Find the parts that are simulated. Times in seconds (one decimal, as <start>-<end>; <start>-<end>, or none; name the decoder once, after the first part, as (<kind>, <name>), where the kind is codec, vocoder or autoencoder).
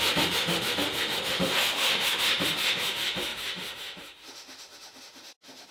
0.0-5.7 (autoencoder, DAC-VAE)